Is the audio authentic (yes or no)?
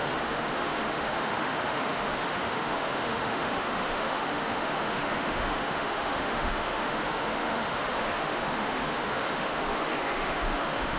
no